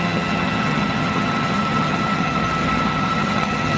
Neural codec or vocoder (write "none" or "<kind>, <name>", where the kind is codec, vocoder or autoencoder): vocoder, HiFi-GAN